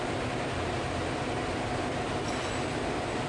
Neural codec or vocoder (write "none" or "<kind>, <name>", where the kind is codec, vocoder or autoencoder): none